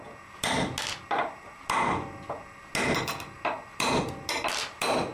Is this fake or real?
real